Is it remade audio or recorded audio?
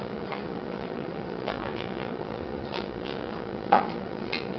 remade